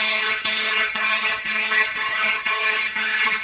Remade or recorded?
remade